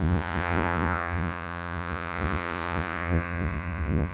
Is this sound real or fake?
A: fake